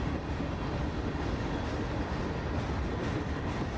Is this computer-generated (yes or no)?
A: no